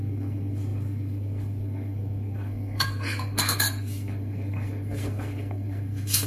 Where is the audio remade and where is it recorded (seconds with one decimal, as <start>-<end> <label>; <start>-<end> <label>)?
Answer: 0.0-6.3 remade